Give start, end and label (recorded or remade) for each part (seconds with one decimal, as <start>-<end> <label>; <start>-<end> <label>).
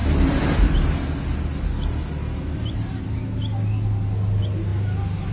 0.0-5.3 recorded